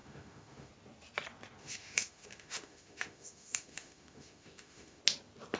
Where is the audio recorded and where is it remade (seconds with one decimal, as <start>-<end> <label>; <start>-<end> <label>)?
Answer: 0.0-0.7 remade; 0.7-1.6 recorded; 1.6-5.0 remade; 5.0-5.6 recorded